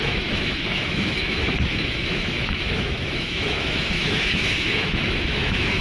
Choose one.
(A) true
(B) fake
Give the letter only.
B